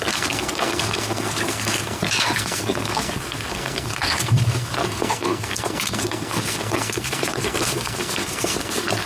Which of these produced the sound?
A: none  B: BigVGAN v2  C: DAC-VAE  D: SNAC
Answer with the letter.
D